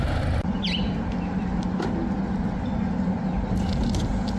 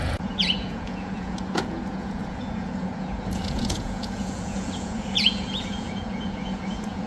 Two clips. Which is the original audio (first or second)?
first